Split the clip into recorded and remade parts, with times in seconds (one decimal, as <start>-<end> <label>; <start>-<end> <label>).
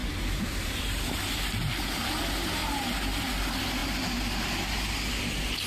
0.0-0.8 remade; 0.8-5.7 recorded